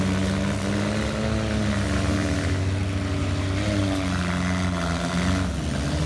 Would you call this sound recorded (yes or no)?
yes